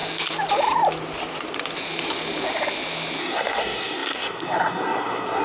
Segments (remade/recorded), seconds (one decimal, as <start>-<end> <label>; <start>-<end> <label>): 0.0-3.2 recorded; 3.2-5.4 remade